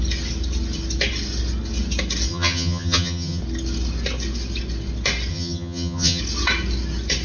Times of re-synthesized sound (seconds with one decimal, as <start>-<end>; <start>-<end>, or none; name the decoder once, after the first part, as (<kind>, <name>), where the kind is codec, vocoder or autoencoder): 2.3-3.4 (vocoder, HiFi-GAN); 5.3-6.2